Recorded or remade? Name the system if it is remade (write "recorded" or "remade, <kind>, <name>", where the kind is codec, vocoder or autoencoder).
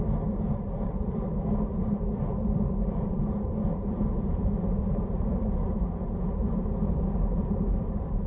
remade, vocoder, BigVGAN v2